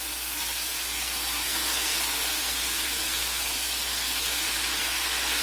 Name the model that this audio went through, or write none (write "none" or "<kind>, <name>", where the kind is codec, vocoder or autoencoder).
codec, SNAC